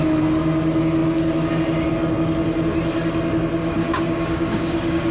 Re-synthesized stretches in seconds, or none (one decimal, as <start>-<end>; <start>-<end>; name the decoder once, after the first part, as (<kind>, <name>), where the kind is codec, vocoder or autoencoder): 3.6-5.1 (codec, DAC)